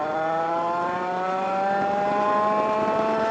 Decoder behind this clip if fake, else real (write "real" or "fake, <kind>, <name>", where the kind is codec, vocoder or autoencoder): fake, vocoder, BigVGAN v2